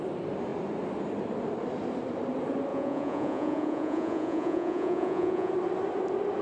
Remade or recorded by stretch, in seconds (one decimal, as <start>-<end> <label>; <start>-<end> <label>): 0.0-2.7 recorded; 2.7-5.5 remade; 5.5-6.4 recorded